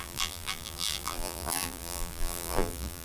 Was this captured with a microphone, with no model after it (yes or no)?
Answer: no